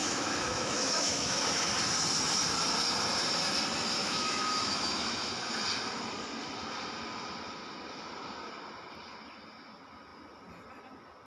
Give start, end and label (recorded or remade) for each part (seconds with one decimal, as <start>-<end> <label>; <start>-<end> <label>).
0.0-1.7 remade; 1.7-4.0 recorded; 4.0-5.3 remade; 5.3-11.3 recorded